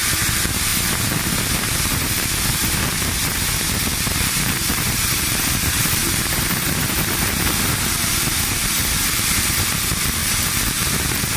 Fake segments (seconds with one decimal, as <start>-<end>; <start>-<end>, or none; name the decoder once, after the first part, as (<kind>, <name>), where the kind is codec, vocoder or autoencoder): 0.0-0.7 (vocoder, BigVGAN v2); 1.4-11.4